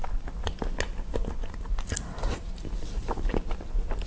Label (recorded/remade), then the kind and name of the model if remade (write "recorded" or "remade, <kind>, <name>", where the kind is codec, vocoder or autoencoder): recorded